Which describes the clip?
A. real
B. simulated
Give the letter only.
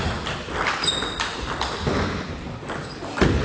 A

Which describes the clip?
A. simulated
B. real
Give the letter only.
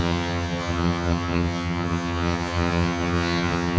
A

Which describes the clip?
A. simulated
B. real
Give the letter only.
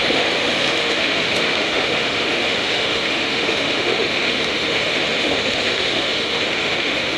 A